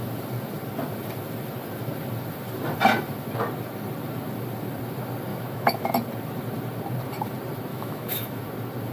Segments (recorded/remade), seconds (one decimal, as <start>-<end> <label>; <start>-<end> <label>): 0.0-5.3 recorded; 5.3-5.9 remade; 5.9-7.7 recorded; 7.7-8.4 remade; 8.4-8.9 recorded